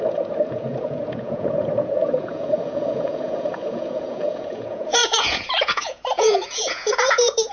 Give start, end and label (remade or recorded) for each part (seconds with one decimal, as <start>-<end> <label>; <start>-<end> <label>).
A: 0.0-7.5 remade